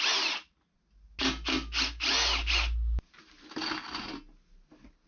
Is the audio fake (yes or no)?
no